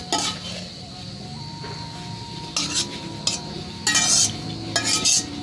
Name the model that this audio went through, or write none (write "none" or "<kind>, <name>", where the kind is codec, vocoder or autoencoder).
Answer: none